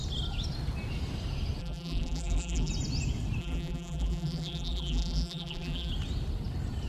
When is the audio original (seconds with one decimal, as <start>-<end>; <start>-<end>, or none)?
0.0-1.6; 2.7-3.4; 5.9-6.9